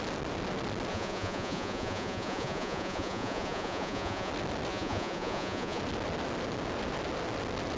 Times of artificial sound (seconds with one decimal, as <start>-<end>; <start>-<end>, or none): 0.9-4.3; 4.7-5.8